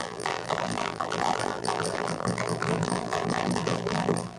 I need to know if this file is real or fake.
fake